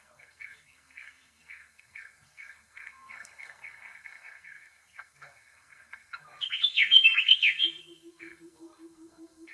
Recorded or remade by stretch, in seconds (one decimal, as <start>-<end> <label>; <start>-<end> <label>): 0.0-9.5 remade